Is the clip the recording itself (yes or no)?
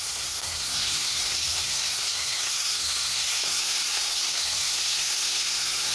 no